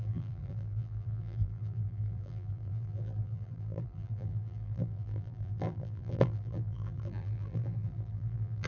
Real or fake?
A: fake